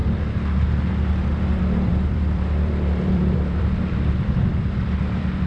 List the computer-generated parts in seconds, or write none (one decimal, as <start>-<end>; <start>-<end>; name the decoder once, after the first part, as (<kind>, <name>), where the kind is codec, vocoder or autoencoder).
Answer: 1.6-5.5 (vocoder, BigVGAN v2)